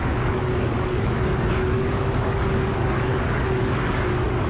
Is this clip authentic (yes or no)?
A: no